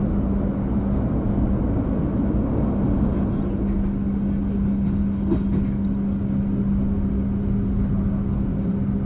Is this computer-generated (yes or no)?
no